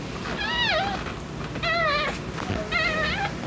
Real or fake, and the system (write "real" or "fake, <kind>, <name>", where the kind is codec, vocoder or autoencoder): real